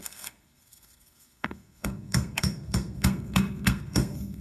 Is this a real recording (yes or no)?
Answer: no